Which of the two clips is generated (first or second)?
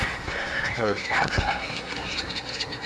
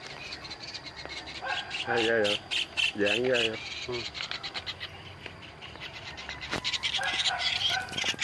first